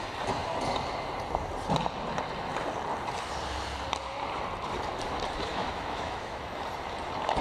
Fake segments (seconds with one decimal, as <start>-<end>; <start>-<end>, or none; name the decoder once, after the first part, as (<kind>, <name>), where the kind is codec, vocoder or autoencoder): 5.5-6.4 (autoencoder, DAC-VAE)